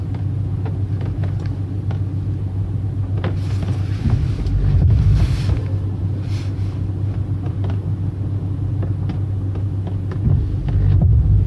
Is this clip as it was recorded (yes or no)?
yes